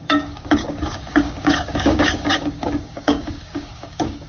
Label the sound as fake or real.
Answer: fake